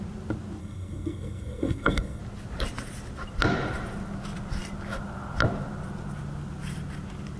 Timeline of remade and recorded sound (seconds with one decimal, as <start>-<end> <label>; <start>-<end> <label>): 0.0-0.6 recorded; 0.6-2.2 remade; 2.2-7.4 recorded